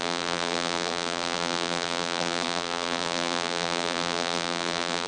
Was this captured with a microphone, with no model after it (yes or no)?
no